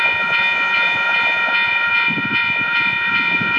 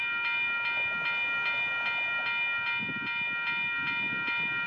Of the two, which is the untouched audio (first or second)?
second